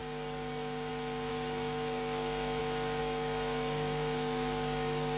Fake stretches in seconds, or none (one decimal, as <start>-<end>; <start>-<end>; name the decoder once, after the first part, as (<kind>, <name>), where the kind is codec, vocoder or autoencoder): 0.0-0.9 (codec, DAC); 1.3-2.6; 3.0-5.2